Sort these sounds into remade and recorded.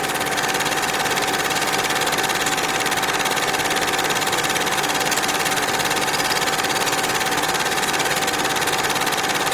recorded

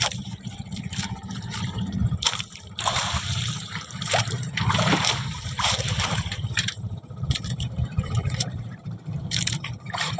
remade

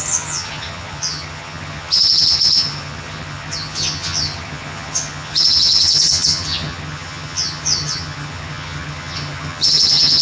remade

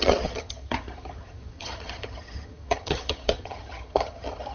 remade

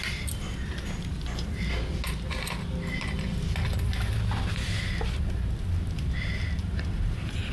recorded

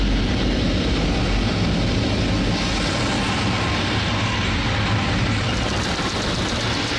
recorded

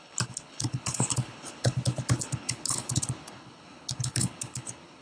remade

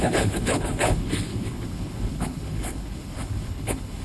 remade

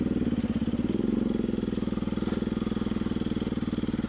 recorded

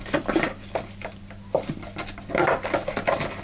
recorded